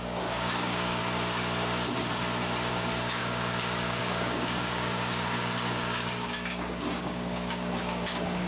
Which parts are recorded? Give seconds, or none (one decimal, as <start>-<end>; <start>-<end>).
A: 1.0-2.7